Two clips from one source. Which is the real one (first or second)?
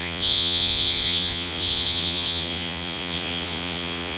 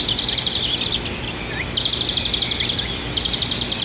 second